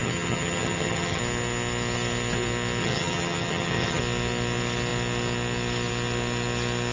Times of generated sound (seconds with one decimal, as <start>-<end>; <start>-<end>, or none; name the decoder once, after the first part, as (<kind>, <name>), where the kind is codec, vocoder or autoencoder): 0.0-1.2 (vocoder, HiFi-GAN); 2.8-4.0